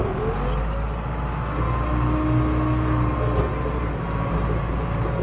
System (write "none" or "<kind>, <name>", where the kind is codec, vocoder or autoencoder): none